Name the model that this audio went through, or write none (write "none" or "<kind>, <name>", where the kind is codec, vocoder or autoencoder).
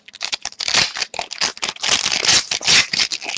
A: none